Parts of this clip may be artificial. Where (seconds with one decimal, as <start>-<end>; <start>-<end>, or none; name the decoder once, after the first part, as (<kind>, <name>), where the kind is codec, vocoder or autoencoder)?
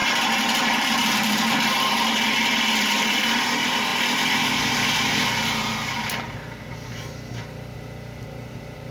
0.0-3.2 (vocoder, BigVGAN v2)